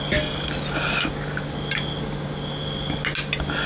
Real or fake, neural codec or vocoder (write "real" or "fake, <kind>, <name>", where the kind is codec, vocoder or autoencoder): real